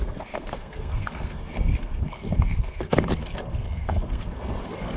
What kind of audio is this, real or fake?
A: fake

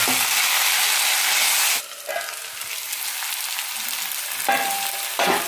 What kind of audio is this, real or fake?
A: real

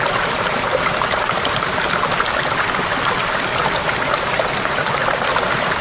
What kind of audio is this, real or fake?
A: real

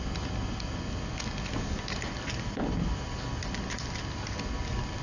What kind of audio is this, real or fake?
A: real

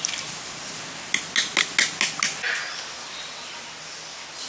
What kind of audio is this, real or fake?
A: real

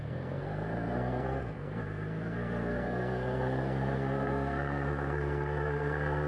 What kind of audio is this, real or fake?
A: fake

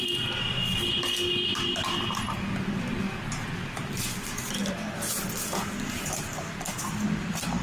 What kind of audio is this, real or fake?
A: real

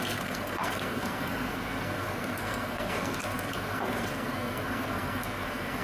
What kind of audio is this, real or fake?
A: fake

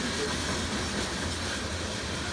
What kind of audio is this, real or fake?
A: real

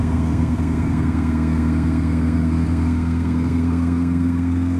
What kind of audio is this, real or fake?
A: fake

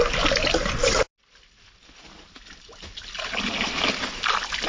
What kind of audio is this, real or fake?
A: real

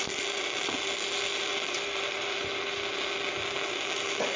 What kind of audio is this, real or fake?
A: real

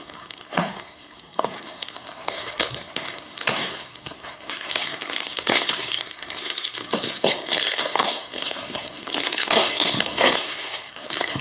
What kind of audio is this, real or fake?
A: fake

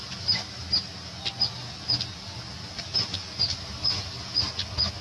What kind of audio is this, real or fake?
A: real